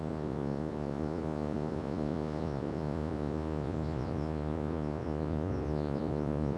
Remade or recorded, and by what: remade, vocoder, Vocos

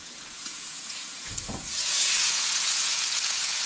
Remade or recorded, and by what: remade, vocoder, Vocos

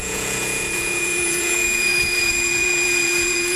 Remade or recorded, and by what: remade, vocoder, Vocos